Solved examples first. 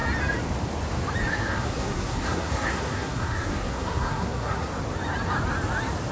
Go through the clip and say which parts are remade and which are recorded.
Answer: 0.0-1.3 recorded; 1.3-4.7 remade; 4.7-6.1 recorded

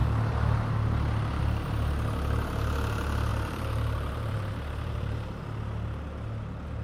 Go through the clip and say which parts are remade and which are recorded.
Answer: 0.0-3.3 recorded; 3.3-5.4 remade; 5.4-6.8 recorded

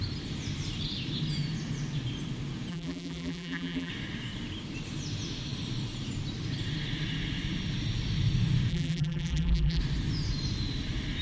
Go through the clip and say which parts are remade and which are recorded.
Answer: 0.0-2.7 recorded; 2.7-3.9 remade; 3.9-8.7 recorded; 8.7-9.8 remade; 9.8-11.2 recorded

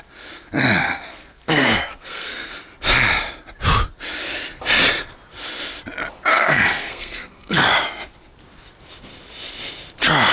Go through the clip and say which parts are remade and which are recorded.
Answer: 0.0-0.8 recorded; 0.8-2.5 remade; 2.5-6.3 recorded; 6.3-7.7 remade; 7.7-10.3 recorded

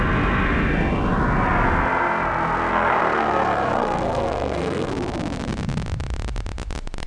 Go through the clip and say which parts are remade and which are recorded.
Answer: 0.0-2.7 recorded; 2.7-4.9 remade; 4.9-7.1 recorded